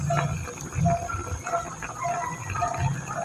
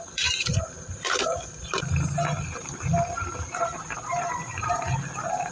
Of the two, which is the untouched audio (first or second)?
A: first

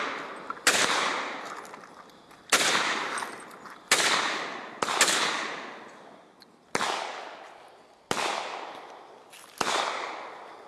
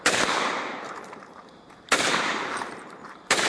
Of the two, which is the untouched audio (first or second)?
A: first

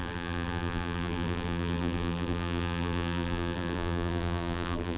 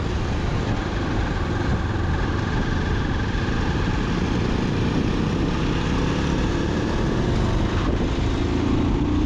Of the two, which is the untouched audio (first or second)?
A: second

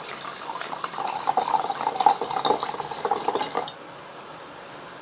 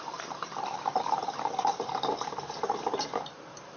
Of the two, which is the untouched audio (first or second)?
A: first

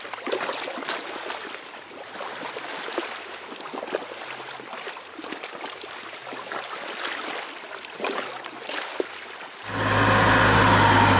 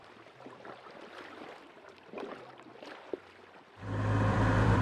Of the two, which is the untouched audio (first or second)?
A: first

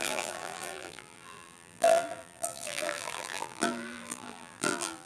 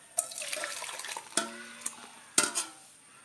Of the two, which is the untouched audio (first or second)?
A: second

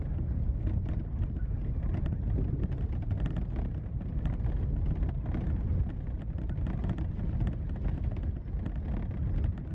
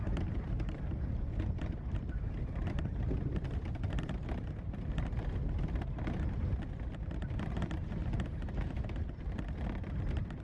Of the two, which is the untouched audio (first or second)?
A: first